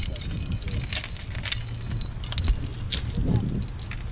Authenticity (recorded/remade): recorded